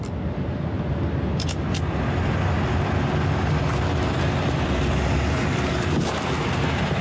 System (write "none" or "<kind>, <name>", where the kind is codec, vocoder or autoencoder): none